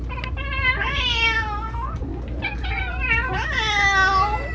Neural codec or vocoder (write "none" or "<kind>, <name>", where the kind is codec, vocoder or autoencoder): none